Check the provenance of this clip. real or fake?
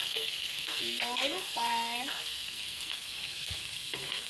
fake